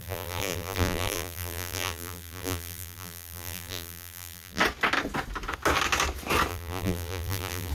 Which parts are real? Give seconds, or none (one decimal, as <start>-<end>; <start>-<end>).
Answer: 4.6-6.5